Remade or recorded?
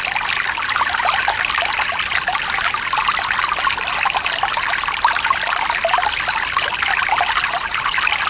recorded